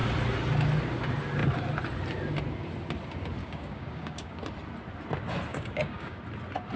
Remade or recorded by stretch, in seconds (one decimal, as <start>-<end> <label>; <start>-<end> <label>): 0.0-3.4 recorded; 3.4-4.4 remade; 4.4-5.5 recorded; 5.5-6.2 remade; 6.2-6.8 recorded